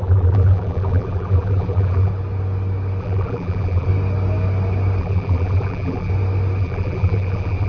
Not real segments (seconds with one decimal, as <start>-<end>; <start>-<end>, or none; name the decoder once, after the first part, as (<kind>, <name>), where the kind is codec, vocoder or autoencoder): 0.0-2.1 (vocoder, BigVGAN v2); 3.0-3.9; 5.0-6.1; 6.6-7.7